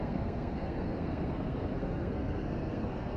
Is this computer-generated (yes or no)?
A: yes